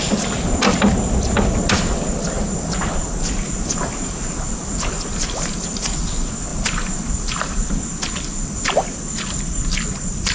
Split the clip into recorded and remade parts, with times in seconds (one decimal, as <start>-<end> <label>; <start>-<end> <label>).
0.0-10.3 recorded